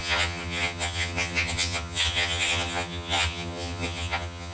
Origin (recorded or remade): remade